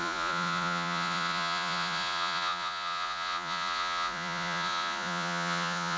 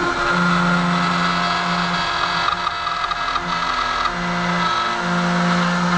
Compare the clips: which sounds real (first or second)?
second